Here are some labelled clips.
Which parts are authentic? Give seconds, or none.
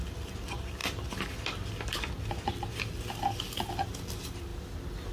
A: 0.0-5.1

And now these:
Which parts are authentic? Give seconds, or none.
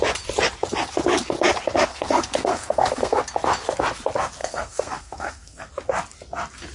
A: 0.0-1.9; 3.2-4.4; 5.7-6.7